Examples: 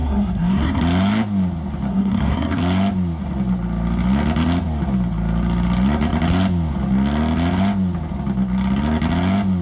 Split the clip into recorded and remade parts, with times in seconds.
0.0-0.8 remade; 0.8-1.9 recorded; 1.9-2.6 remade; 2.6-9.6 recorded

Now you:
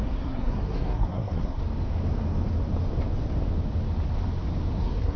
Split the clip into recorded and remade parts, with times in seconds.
0.0-1.6 remade; 1.6-4.7 recorded; 4.7-5.2 remade